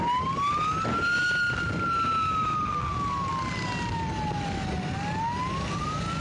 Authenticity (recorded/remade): recorded